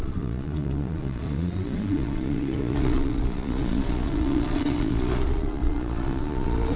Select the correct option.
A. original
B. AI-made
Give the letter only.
B